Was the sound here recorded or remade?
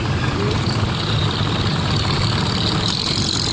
recorded